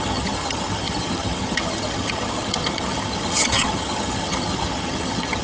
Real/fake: fake